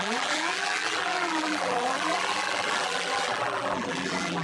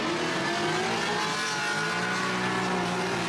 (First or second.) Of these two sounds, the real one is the second